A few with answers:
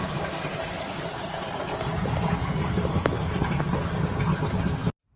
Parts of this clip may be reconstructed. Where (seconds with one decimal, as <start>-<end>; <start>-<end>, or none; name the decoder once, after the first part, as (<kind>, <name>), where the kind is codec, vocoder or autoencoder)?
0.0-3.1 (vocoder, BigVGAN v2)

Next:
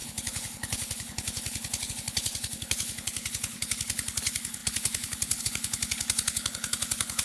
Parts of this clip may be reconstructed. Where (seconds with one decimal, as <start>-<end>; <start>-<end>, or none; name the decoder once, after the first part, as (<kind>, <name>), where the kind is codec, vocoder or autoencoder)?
0.0-7.2 (codec, HILCodec)

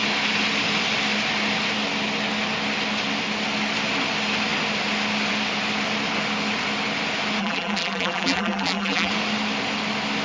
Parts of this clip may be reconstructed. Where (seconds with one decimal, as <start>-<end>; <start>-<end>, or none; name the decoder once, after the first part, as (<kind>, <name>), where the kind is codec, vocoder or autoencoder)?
7.4-9.1 (vocoder, BigVGAN v2)

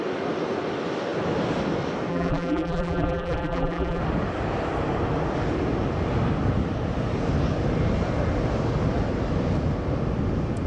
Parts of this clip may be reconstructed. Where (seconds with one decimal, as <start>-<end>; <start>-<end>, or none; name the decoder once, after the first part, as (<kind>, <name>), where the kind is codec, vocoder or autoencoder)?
2.1-4.0 (vocoder, BigVGAN v2)

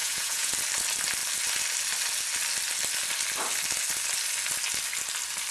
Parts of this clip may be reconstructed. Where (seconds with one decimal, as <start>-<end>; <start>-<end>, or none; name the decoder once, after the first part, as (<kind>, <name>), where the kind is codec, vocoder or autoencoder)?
0.0-0.5 (vocoder, Vocos)

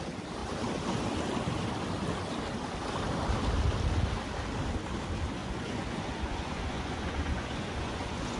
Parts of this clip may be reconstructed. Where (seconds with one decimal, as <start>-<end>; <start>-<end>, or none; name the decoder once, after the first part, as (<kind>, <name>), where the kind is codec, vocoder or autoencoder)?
5.4-8.4 (vocoder, Vocos)